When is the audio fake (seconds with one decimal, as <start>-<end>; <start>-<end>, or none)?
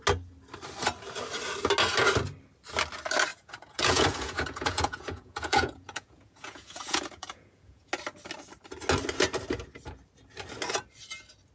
3.3-7.9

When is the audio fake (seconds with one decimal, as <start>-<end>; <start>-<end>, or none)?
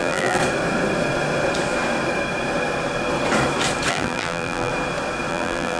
0.0-0.4; 3.9-4.7; 5.3-5.8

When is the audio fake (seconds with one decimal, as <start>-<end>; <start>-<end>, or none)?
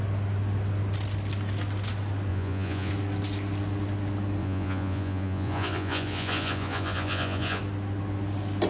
2.3-2.9; 4.4-7.6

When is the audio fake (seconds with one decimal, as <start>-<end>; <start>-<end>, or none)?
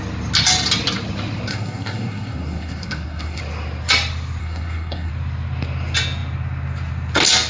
1.5-3.4; 4.4-5.1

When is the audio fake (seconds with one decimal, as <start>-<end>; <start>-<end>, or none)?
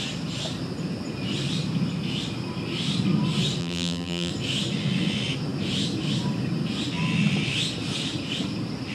3.6-4.3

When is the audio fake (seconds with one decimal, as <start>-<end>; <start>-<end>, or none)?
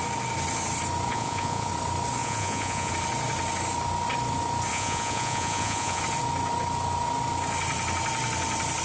1.1-1.7; 2.2-2.9; 4.7-6.0